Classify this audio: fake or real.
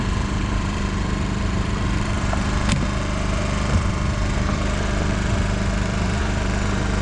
fake